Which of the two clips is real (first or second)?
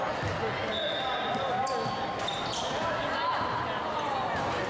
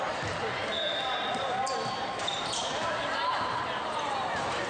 first